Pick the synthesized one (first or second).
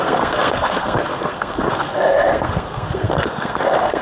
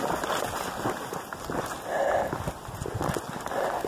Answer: first